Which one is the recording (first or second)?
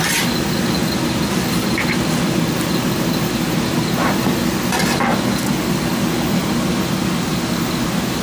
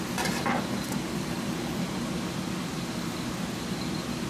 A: first